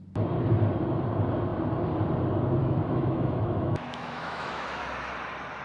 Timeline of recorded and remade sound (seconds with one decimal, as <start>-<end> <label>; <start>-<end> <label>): 0.0-2.6 recorded; 2.6-4.8 remade; 4.8-5.6 recorded